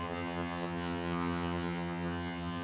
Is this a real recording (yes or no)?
no